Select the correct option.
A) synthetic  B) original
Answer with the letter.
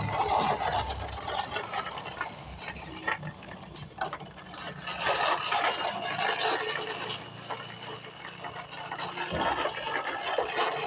B